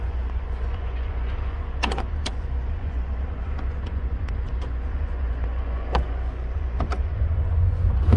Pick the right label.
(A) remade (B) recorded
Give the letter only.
A